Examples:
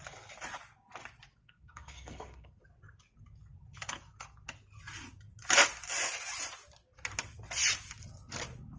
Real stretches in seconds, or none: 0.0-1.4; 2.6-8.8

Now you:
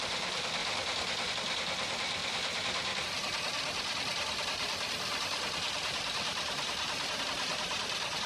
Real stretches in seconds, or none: 0.0-0.6; 1.3-2.2; 7.2-8.3

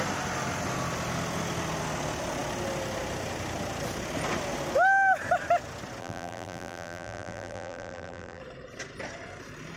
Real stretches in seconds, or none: 0.0-6.0; 8.4-9.8

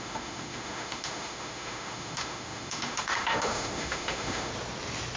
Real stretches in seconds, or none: 4.5-5.2

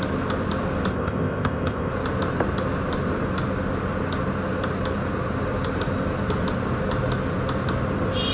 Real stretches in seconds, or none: 0.0-0.9; 1.9-8.3

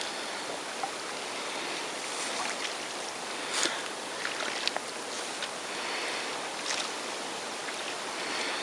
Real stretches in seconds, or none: 0.0-8.6

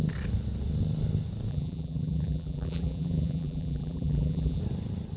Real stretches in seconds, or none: 0.0-1.5; 4.6-5.2

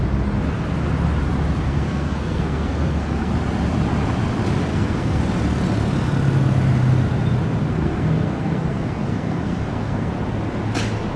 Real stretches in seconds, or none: 0.0-1.6; 3.3-4.7; 5.2-7.7; 10.1-11.2